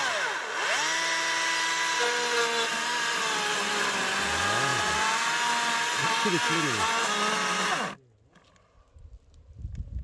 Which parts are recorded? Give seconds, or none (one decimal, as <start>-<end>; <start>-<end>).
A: 0.0-10.0